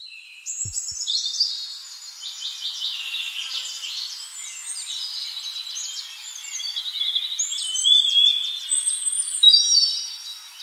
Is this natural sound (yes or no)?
yes